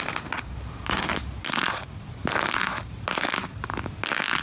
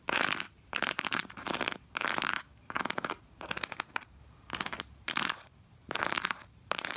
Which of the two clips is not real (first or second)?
second